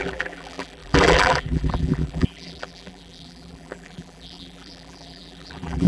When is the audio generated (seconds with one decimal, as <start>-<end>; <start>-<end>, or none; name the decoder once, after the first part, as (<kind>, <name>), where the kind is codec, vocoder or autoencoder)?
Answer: 0.0-5.9 (vocoder, BigVGAN v2)